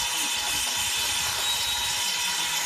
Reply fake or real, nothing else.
real